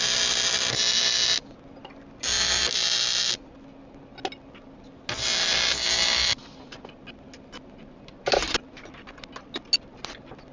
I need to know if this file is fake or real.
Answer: real